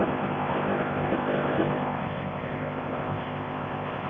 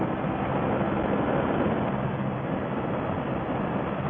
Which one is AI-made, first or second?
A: first